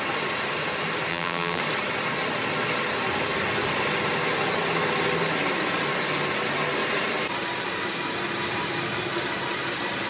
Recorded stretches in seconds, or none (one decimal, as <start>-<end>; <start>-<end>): 0.0-1.1; 1.6-10.1

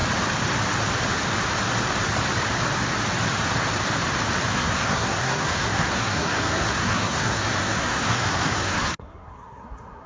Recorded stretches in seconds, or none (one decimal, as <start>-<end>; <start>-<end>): 0.0-4.5

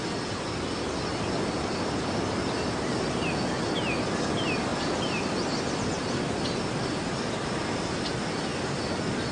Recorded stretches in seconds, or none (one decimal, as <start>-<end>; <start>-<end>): 0.0-9.3

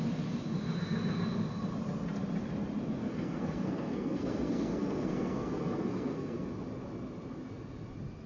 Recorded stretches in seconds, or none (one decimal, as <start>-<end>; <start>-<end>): 0.0-3.0; 6.5-8.3

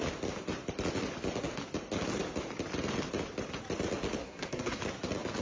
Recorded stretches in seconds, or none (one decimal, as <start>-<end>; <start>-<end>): 0.0-4.2; 4.8-5.4

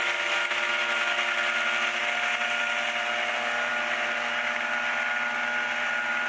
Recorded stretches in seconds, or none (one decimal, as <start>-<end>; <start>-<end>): 0.0-6.3

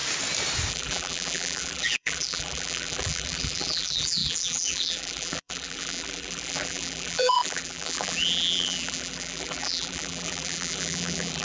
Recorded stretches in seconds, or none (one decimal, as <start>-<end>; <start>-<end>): 0.0-0.7

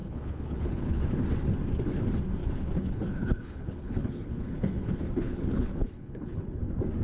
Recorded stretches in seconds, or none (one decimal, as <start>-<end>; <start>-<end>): 1.0-2.4; 6.6-7.0